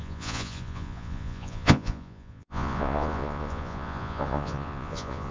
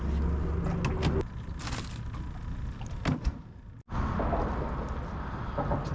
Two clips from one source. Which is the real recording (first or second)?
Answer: second